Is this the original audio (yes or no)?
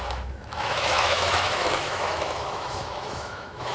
no